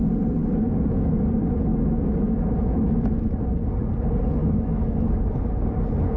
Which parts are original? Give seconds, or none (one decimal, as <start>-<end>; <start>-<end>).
0.0-0.4; 1.1-1.7; 3.4-4.4; 5.2-6.2